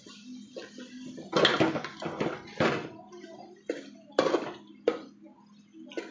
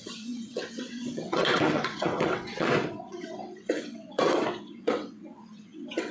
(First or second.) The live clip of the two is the first